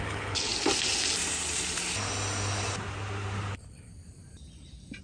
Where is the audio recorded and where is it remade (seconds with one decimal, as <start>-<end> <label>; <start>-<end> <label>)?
0.0-0.5 remade; 0.5-3.5 recorded; 3.5-3.9 remade; 3.9-5.0 recorded

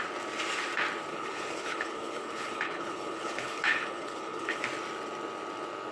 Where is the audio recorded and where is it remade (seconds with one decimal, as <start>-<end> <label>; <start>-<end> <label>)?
0.0-1.1 recorded; 1.1-4.6 remade; 4.6-5.9 recorded